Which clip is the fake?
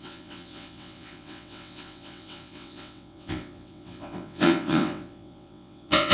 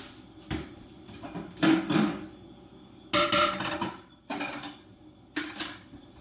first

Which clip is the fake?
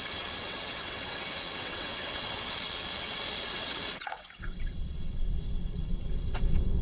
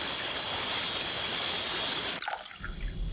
first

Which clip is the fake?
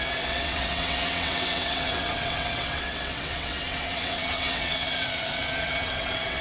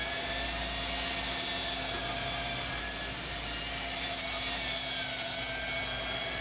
first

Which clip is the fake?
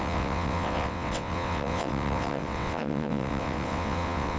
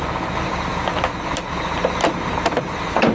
first